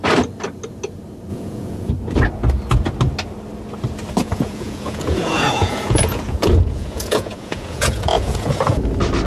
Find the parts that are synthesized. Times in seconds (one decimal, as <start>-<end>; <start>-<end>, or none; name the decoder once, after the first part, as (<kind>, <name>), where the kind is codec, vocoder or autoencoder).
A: 1.3-1.9 (vocoder, Vocos); 4.2-8.8